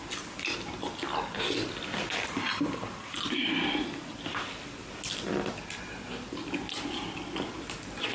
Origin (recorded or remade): recorded